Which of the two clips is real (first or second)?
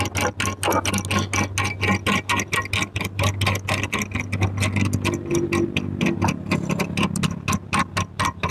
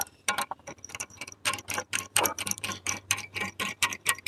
first